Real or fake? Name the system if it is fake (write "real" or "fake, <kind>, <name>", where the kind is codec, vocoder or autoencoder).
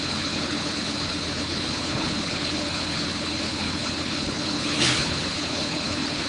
fake, codec, HILCodec